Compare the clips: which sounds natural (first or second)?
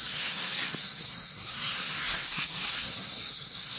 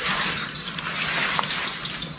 second